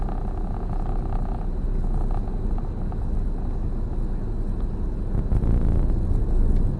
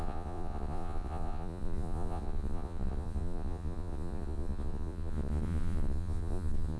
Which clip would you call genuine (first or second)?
first